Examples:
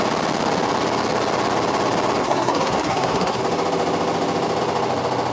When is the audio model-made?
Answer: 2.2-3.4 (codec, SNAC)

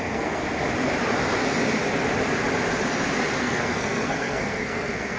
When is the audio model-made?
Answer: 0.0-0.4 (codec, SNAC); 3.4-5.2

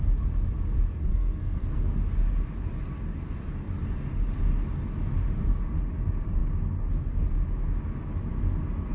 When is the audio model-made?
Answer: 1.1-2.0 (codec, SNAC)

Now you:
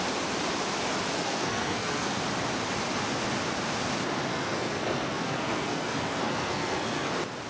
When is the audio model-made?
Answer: 1.2-2.2 (codec, SNAC); 4.3-7.1

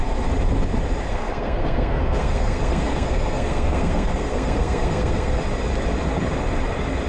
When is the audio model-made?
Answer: 1.1-5.4 (codec, SNAC)